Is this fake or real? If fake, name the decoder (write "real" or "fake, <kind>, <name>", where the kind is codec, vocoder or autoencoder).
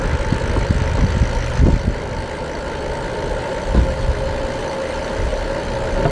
real